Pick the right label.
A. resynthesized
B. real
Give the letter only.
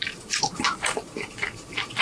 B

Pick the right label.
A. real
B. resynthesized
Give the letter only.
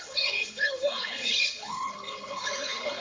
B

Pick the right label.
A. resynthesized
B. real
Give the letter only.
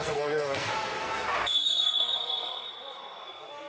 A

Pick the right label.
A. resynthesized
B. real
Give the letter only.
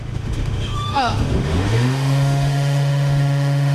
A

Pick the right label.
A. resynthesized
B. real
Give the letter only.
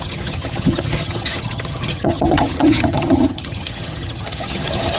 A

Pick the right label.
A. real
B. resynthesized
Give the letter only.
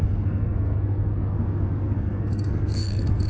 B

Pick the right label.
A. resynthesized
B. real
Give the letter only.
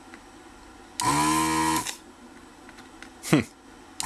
B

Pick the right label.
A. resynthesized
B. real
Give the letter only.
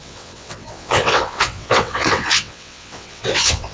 A